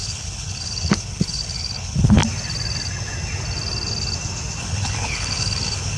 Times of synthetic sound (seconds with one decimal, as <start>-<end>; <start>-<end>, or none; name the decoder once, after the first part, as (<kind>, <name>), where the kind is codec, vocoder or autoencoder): 0.0-2.2 (codec, HILCodec); 4.6-6.0